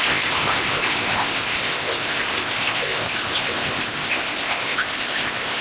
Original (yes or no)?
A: no